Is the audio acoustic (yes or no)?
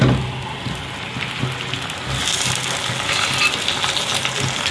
yes